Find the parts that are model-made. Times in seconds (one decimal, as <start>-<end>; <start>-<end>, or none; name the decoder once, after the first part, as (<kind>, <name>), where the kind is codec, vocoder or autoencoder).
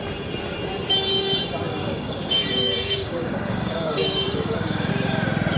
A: 1.8-4.9 (codec, DAC)